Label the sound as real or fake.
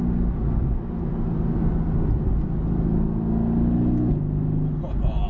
real